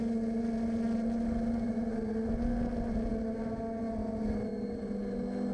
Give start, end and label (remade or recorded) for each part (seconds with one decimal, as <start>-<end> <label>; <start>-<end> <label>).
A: 0.0-5.5 recorded